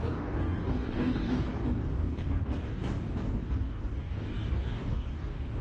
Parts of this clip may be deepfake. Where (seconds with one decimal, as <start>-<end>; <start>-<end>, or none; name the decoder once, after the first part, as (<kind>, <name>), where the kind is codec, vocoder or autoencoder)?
0.0-5.6 (codec, DAC)